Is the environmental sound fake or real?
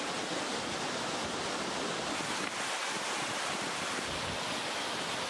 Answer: real